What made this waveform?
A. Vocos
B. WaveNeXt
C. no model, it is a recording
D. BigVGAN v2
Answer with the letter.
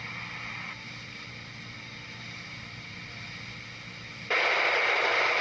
C